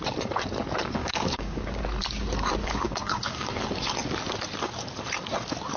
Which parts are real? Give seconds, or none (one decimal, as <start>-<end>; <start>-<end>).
0.0-1.0; 1.8-2.6; 3.5-5.8